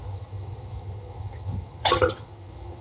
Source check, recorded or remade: remade